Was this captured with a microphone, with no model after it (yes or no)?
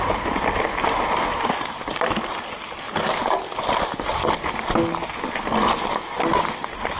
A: yes